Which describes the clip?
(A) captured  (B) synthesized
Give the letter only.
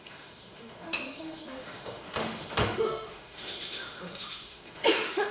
B